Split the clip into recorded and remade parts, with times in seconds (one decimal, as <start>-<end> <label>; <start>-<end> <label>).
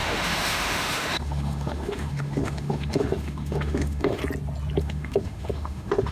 0.0-4.2 remade; 4.2-4.8 recorded; 4.8-6.1 remade